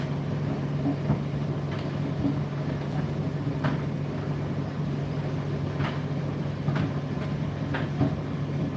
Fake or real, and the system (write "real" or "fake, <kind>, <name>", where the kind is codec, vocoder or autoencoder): real